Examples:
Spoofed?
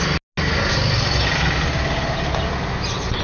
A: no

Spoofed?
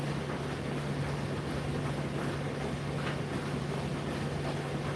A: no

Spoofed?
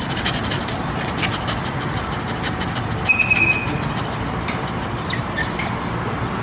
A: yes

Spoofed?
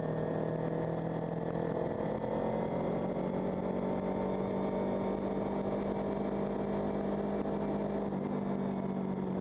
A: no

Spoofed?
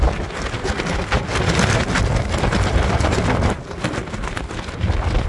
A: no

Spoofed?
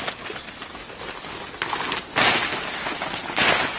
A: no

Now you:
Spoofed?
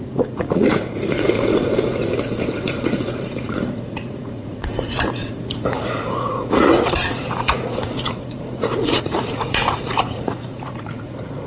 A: yes